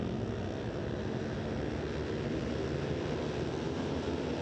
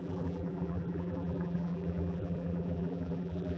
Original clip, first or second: first